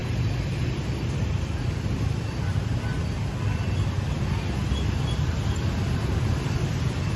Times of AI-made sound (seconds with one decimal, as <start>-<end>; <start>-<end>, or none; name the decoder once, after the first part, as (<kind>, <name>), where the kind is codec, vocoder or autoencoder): none